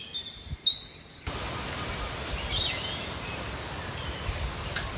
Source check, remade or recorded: recorded